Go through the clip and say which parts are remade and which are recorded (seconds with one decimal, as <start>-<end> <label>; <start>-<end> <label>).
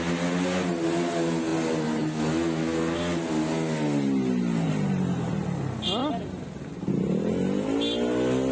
0.0-8.5 recorded